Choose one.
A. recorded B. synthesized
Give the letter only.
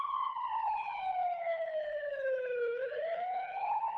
B